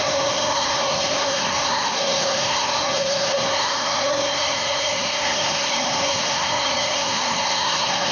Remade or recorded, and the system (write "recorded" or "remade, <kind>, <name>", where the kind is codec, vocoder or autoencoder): remade, codec, SNAC